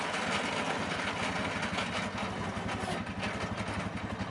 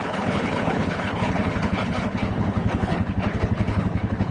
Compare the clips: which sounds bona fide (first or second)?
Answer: first